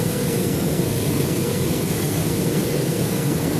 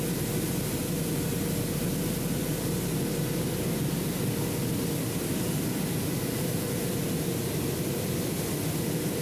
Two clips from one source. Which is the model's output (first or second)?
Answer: first